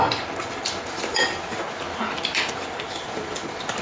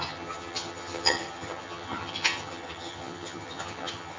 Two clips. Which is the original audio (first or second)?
first